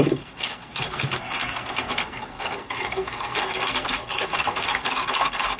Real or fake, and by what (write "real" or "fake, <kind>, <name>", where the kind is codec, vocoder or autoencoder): fake, codec, SNAC